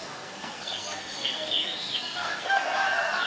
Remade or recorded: remade